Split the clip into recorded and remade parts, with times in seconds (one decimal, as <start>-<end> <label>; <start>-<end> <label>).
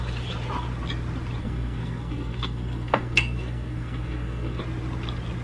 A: 0.0-1.4 recorded; 1.4-4.6 remade; 4.6-5.4 recorded